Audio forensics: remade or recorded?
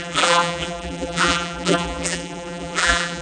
remade